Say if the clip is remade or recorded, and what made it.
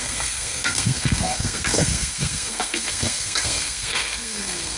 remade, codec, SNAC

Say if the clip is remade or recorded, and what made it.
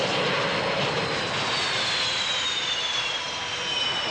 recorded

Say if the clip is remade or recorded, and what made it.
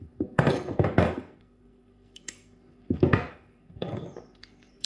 remade, codec, SNAC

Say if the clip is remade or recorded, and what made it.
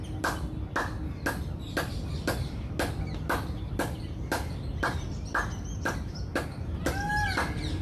recorded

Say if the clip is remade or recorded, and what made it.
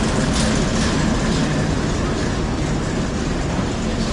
recorded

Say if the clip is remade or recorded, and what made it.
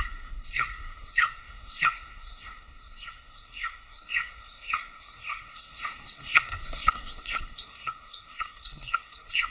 remade, codec, SNAC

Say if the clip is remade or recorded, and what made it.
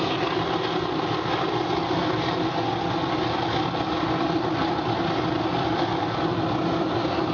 recorded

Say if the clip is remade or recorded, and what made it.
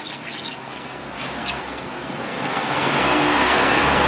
remade, codec, SNAC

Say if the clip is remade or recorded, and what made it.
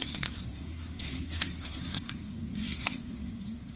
remade, codec, SNAC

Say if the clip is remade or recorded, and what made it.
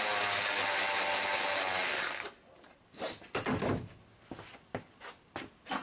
recorded